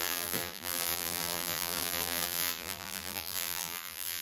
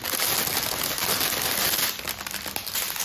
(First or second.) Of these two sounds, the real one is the second